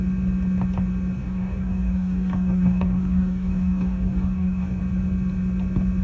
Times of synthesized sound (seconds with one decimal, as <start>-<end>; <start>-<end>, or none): 1.2-4.8

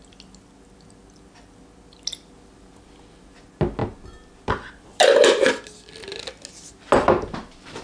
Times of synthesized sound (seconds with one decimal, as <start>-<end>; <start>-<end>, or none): none

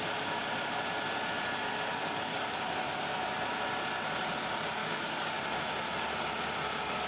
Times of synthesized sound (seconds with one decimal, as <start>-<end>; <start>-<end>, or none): 1.9-2.6; 4.8-5.4

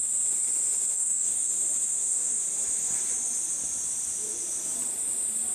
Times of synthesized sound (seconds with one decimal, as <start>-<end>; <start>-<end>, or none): 0.9-1.5; 1.9-2.4

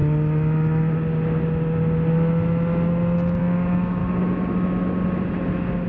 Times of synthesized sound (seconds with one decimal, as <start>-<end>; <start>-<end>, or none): 3.4-4.0